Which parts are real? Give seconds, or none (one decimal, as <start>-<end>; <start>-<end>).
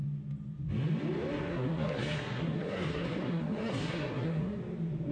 0.0-1.5; 4.6-5.1